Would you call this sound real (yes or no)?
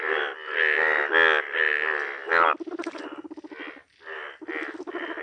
yes